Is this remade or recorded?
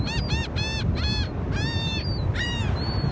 recorded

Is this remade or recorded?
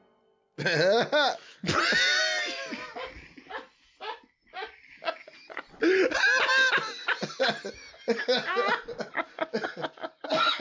recorded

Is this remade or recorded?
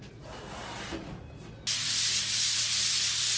recorded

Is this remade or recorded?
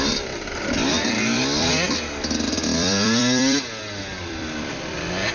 remade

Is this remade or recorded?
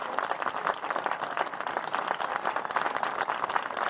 recorded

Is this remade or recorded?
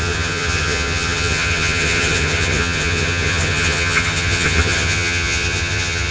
remade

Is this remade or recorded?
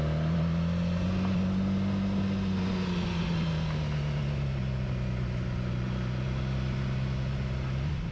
recorded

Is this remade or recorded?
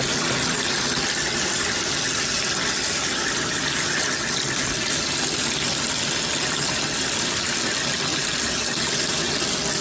recorded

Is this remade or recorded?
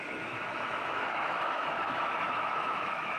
remade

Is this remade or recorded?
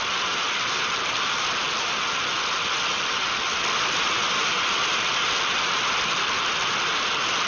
recorded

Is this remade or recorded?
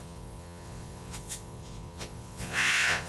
remade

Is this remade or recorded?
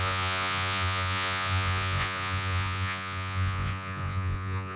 remade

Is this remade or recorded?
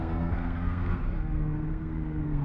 remade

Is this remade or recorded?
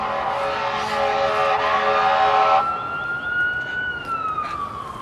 recorded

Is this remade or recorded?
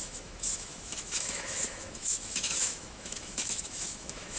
remade